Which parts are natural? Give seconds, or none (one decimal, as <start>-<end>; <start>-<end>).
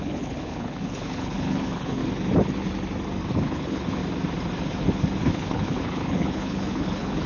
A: 2.0-3.3; 4.0-5.2